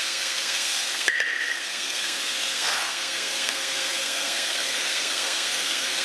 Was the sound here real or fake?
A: fake